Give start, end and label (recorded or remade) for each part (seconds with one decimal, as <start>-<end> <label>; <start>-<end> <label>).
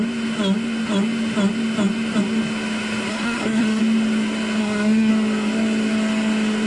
0.0-3.1 recorded; 3.1-3.8 remade; 3.8-4.6 recorded; 4.6-5.1 remade; 5.1-6.7 recorded